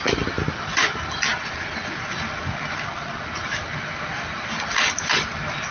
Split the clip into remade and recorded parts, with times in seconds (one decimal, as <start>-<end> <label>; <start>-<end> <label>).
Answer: 0.0-5.7 recorded